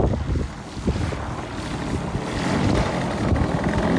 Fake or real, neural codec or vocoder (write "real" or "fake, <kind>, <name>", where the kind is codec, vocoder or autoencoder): real